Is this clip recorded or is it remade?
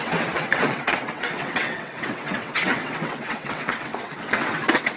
remade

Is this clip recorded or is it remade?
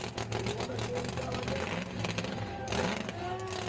recorded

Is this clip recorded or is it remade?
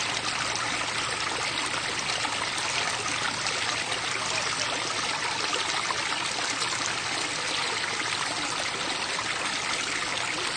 recorded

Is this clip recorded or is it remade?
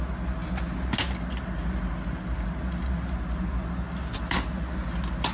recorded